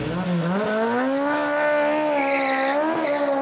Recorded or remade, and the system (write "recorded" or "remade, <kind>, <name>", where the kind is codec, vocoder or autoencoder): recorded